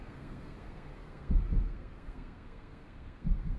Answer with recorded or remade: remade